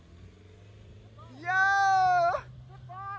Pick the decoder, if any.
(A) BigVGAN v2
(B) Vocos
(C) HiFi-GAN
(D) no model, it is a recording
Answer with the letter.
D